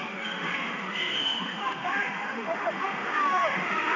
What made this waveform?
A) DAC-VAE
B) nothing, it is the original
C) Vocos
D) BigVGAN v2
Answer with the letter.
A